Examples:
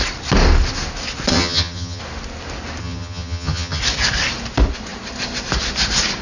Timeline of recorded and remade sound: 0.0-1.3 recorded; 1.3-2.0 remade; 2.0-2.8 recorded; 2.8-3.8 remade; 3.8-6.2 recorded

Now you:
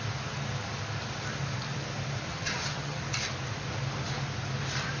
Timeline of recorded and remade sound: 0.0-2.3 recorded; 2.3-3.0 remade; 3.0-5.0 recorded